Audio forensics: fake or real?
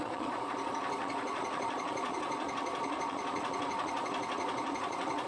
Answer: fake